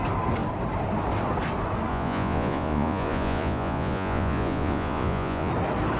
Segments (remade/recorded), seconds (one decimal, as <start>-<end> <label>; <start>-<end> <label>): 0.0-1.9 recorded; 1.9-5.5 remade; 5.5-6.0 recorded

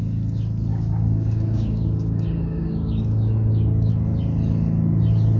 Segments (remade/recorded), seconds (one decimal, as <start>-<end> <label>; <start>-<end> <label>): 0.0-0.7 recorded; 0.7-3.9 remade; 3.9-5.4 recorded

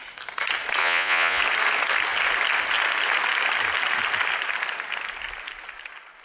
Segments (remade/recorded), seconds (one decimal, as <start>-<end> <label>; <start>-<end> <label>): 0.0-0.8 recorded; 0.8-1.4 remade; 1.4-6.2 recorded